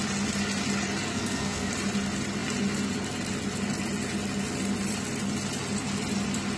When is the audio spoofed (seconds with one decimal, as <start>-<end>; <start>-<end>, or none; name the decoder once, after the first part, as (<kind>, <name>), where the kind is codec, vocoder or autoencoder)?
1.1-1.7 (codec, SNAC)